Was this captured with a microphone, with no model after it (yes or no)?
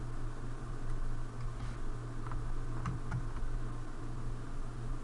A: yes